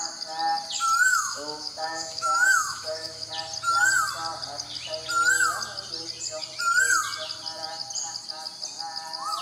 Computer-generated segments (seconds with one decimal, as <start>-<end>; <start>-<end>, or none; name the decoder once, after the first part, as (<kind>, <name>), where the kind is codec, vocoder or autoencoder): 1.1-3.3 (autoencoder, DAC-VAE)